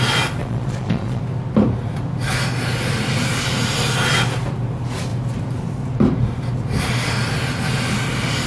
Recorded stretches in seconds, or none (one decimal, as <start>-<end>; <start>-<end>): 0.0-0.4; 1.2-8.5